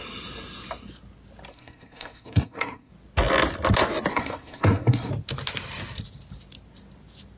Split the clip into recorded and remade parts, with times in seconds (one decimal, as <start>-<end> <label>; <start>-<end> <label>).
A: 0.0-1.5 recorded; 1.5-2.9 remade; 2.9-4.1 recorded; 4.1-5.1 remade; 5.1-7.4 recorded